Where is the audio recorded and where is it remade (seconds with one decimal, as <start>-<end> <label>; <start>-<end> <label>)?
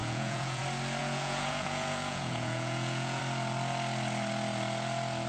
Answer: 0.0-0.6 remade; 0.6-1.0 recorded; 1.0-3.2 remade; 3.2-5.3 recorded